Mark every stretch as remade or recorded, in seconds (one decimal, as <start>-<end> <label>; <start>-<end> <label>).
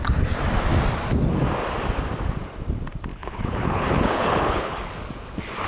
0.0-3.1 recorded; 3.1-4.9 remade; 4.9-5.7 recorded